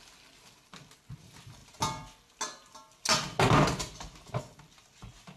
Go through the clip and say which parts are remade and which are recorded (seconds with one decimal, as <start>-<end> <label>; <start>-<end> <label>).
0.0-5.4 recorded